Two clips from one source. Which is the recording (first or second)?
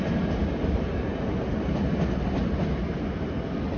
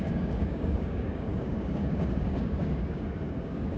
first